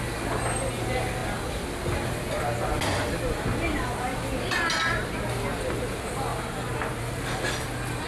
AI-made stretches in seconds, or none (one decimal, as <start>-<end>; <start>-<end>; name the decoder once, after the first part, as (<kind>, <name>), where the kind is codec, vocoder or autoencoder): none